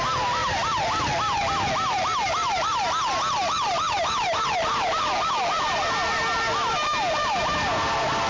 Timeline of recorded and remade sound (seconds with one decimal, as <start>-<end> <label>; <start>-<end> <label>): 0.0-8.3 recorded